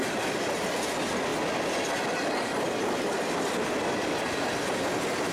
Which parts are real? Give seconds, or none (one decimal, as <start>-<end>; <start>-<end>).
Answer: 0.0-5.3